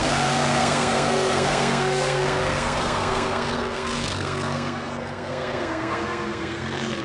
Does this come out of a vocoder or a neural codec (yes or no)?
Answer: yes